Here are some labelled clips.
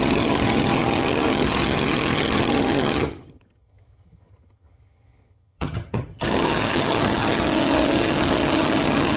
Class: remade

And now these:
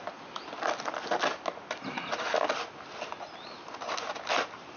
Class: recorded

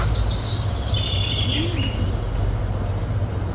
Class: recorded